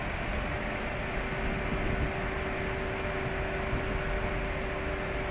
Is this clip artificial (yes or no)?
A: no